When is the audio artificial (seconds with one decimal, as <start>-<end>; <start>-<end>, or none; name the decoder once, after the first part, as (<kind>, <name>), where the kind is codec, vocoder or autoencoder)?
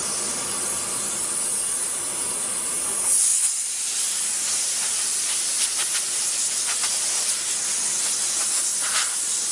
none